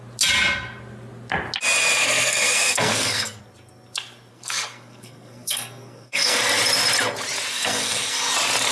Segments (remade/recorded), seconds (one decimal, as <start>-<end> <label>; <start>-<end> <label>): 0.0-2.0 recorded; 2.0-3.4 remade; 3.4-4.3 recorded; 4.3-6.4 remade; 6.4-7.5 recorded; 7.5-8.2 remade; 8.2-8.7 recorded